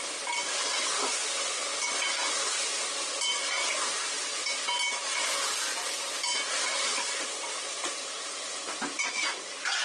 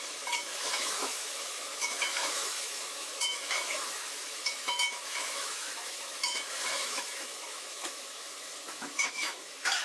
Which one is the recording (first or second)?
first